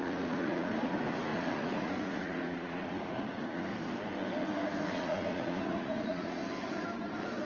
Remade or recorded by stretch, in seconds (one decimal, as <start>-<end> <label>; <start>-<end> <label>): 0.0-3.7 remade; 3.7-4.9 recorded; 4.9-6.4 remade; 6.4-7.5 recorded